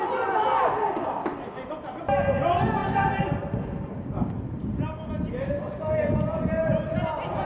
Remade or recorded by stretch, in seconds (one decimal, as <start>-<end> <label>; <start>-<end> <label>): 0.0-7.5 recorded